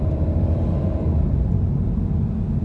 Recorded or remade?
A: recorded